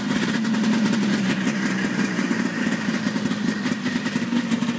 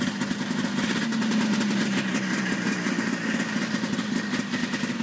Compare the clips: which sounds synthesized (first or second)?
first